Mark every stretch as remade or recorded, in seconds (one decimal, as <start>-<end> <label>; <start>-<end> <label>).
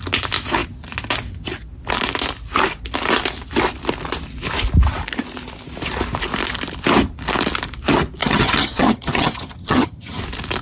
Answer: 0.0-8.2 recorded; 8.2-10.2 remade; 10.2-10.6 recorded